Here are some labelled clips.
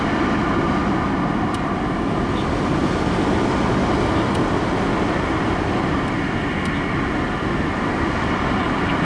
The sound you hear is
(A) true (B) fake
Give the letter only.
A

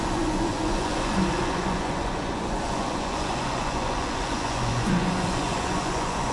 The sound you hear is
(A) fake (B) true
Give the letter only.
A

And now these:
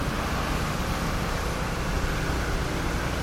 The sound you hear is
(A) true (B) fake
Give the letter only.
A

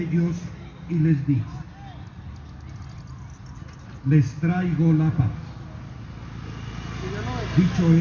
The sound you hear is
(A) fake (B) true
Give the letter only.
B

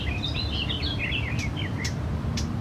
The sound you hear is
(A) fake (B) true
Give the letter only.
A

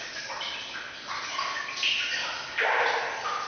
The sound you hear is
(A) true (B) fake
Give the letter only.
A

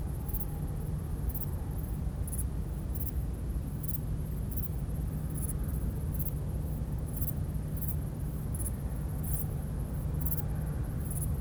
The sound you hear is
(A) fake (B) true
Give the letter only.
B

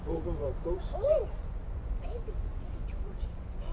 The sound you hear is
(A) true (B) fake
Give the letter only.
B